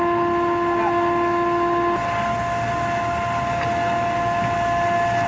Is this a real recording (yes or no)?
yes